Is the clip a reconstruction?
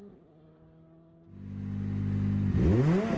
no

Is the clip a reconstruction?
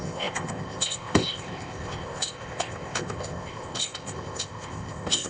yes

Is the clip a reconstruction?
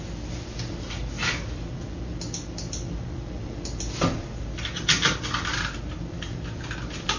no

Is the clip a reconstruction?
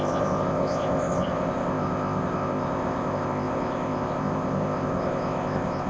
yes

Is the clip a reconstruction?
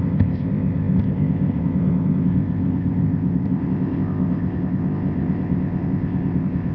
yes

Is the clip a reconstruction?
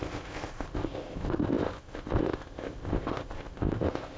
yes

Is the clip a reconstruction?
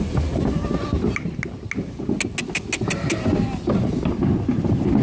no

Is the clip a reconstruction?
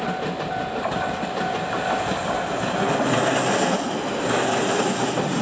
no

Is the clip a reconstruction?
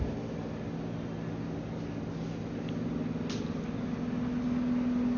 no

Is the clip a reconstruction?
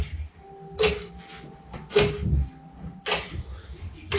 no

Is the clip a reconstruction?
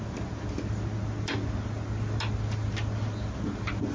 no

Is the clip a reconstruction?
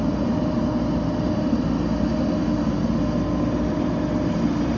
no